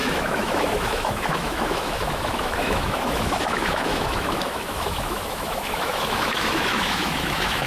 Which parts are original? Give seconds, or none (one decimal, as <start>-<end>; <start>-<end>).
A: none